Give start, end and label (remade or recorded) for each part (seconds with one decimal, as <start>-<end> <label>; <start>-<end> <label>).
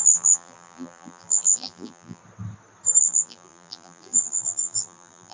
0.0-2.2 remade; 2.2-3.0 recorded; 3.0-5.3 remade